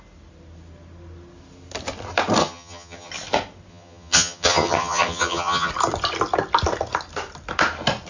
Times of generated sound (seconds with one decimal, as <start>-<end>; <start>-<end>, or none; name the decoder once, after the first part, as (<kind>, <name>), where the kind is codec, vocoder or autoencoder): 2.4-3.1 (vocoder, HiFi-GAN); 3.7-5.7